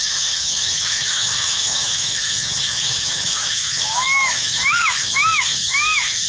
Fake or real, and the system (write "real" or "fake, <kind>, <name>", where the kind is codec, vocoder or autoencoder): fake, autoencoder, DAC-VAE